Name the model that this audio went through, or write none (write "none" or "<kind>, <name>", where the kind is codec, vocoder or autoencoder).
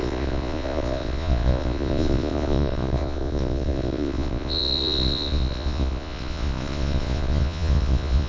vocoder, Vocos